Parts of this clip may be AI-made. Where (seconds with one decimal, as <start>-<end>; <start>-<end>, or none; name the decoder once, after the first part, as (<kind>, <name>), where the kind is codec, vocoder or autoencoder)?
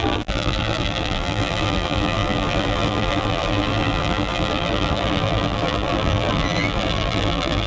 0.0-7.7 (vocoder, BigVGAN v2)